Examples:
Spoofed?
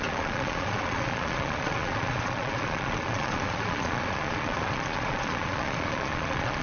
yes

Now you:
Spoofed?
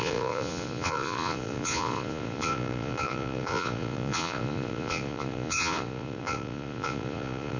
yes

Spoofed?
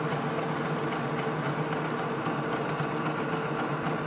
no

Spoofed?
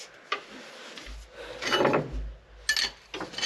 no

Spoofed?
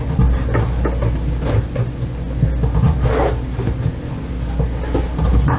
no